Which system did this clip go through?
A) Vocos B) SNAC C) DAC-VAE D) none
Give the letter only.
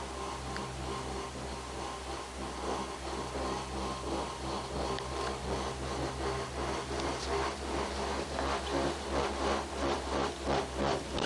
D